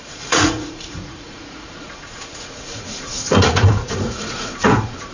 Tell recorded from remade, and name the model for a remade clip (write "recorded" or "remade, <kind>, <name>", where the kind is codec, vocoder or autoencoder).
remade, vocoder, Vocos